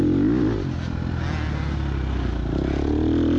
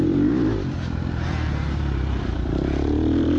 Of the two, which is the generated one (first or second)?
second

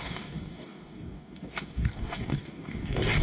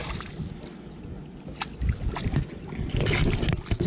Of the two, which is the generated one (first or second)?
first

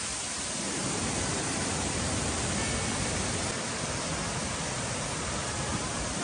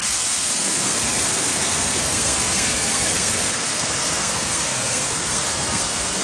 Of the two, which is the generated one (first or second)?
second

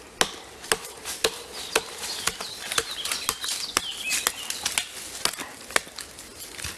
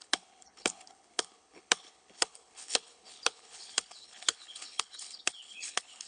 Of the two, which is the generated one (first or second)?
second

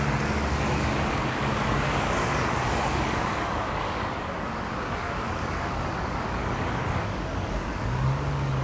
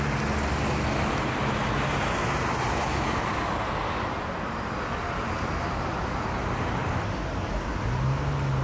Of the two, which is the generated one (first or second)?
first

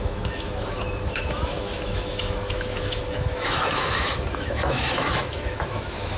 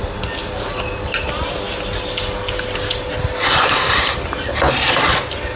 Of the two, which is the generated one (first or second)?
first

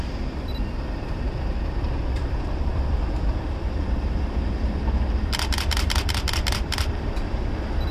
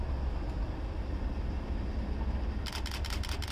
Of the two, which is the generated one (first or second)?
first